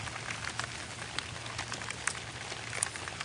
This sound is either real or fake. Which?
real